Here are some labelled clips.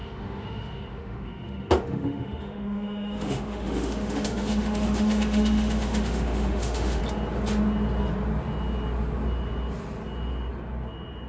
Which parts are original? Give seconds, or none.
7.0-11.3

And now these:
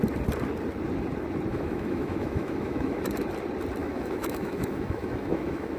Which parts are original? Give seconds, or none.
0.0-1.5; 3.0-3.8

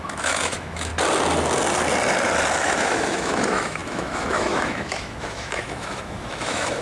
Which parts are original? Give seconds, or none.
0.9-2.6

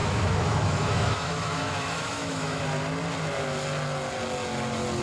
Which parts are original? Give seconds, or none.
2.6-5.0

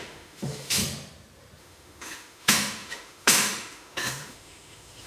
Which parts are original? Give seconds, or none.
0.8-1.6

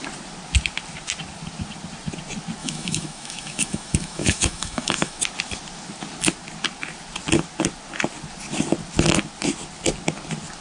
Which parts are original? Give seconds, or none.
0.0-2.6; 5.2-10.6